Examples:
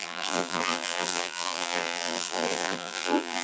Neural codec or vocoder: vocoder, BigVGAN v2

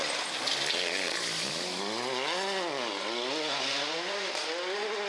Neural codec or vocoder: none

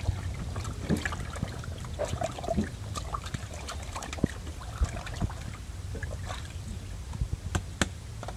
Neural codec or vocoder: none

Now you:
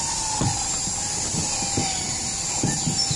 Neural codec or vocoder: none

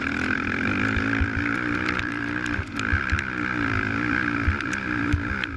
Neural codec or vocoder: vocoder, BigVGAN v2